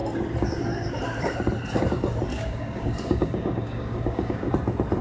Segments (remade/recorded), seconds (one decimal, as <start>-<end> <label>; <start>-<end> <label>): 0.0-2.3 recorded; 2.3-4.5 remade; 4.5-5.0 recorded